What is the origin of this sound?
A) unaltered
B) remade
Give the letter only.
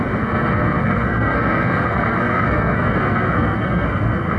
B